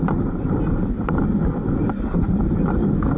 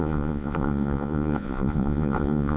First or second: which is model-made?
second